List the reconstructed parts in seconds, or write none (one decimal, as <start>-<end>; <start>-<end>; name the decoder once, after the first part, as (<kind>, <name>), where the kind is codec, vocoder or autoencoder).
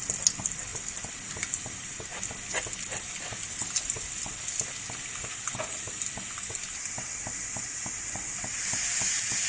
none